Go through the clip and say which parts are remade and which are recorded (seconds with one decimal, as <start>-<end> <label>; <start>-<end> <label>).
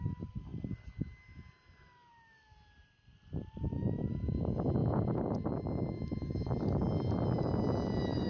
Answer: 0.0-4.8 recorded; 4.8-5.5 remade; 5.5-8.3 recorded